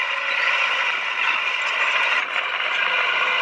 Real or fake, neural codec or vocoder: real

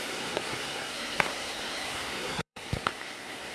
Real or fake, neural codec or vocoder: fake, codec, SNAC